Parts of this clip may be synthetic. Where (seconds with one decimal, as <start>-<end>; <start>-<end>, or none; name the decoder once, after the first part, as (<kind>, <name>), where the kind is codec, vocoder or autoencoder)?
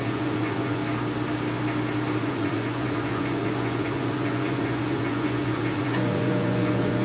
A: 0.0-0.8 (vocoder, Vocos); 2.2-7.0